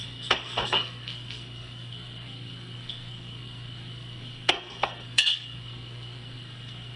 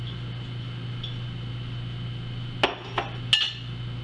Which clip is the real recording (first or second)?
second